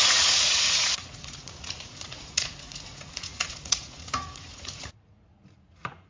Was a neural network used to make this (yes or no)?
yes